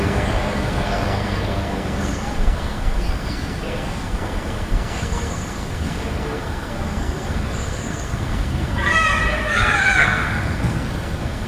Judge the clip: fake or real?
fake